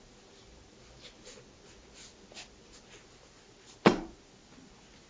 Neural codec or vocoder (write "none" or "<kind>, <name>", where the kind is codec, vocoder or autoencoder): none